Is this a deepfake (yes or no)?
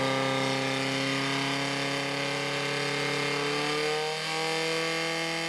no